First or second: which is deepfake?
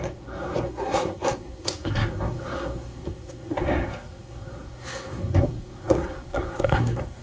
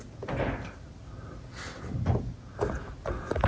first